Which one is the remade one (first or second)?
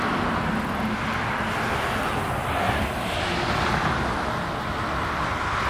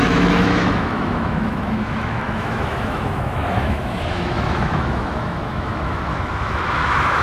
second